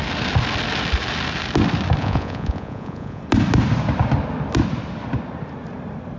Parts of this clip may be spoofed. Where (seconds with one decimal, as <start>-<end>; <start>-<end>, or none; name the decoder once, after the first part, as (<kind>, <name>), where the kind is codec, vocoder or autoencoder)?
2.0-3.2 (vocoder, Vocos)

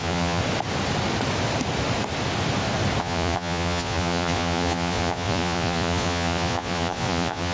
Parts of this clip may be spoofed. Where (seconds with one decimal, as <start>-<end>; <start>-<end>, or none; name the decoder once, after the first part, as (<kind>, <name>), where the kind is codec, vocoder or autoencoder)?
0.0-0.4 (vocoder, Vocos); 3.0-7.5

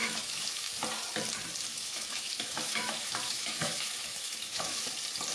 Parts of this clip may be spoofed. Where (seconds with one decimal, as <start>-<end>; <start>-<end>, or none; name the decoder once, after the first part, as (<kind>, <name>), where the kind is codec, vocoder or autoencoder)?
0.0-0.7 (autoencoder, DAC-VAE); 1.7-4.8

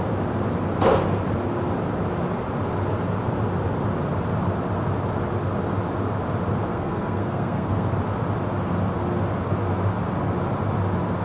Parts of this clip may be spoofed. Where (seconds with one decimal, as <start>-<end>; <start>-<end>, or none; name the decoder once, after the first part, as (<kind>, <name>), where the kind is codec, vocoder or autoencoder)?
6.7-7.9 (codec, SNAC)